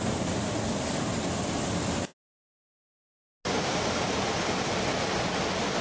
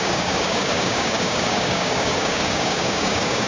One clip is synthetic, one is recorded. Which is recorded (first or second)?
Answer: first